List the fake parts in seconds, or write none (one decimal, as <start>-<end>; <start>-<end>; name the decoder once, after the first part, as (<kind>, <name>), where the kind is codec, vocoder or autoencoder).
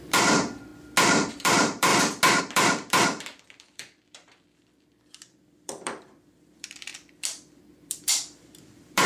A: 0.0-0.7 (vocoder, BigVGAN v2); 1.3-1.9; 2.4-6.9; 7.6-9.1